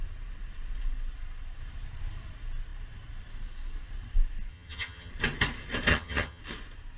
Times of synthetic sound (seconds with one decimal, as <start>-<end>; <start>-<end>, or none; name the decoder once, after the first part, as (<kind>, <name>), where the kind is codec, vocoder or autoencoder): 4.5-5.1 (vocoder, HiFi-GAN); 5.9-6.4